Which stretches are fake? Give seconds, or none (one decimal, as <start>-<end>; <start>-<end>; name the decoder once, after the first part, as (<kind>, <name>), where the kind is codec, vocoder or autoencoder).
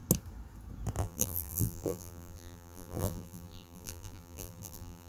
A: 1.0-5.1 (vocoder, BigVGAN v2)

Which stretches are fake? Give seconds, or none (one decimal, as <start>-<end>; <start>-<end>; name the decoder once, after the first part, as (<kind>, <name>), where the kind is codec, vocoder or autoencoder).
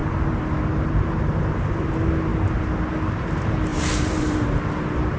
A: 3.7-4.6 (vocoder, BigVGAN v2)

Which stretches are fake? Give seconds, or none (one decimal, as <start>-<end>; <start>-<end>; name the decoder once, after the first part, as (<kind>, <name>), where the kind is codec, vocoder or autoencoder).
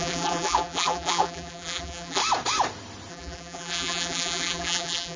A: 0.0-2.2 (vocoder, BigVGAN v2); 3.1-5.2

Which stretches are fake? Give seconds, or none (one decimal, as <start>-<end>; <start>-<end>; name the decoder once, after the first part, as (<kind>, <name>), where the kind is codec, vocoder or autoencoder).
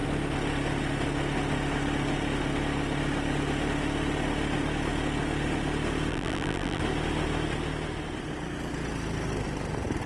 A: 6.1-6.8 (vocoder, BigVGAN v2)